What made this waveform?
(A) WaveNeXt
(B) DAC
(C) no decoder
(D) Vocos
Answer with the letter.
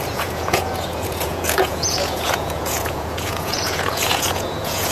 D